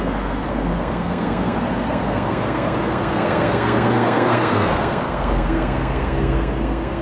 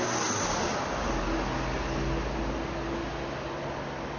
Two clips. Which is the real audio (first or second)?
second